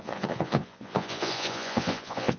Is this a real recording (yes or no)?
no